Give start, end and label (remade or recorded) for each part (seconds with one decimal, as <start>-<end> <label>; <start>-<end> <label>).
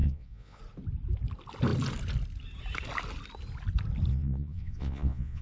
0.0-0.6 remade; 0.6-4.1 recorded; 4.1-5.4 remade